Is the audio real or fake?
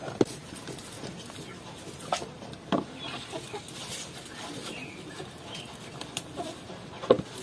real